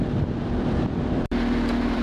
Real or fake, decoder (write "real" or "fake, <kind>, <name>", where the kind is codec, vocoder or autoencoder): fake, vocoder, BigVGAN v2